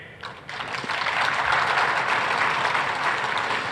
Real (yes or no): yes